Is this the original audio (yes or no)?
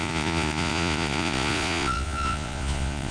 no